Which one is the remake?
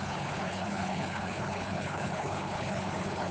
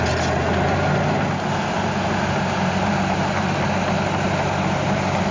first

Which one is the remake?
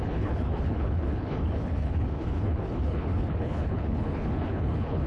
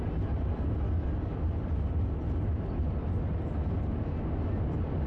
first